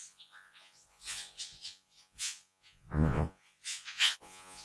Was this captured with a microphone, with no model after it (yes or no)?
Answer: no